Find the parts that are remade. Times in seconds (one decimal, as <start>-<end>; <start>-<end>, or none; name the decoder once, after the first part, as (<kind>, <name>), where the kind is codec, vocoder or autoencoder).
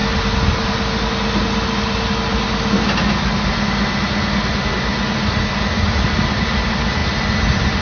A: none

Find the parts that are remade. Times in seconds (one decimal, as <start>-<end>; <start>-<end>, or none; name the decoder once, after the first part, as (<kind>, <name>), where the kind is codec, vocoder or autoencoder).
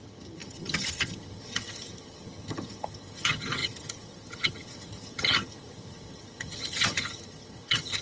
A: 0.0-8.0 (vocoder, HiFi-GAN)